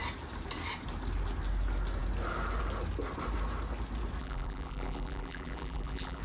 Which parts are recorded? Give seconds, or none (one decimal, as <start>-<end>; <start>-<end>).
0.0-4.2